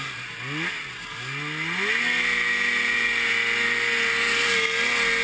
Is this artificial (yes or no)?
no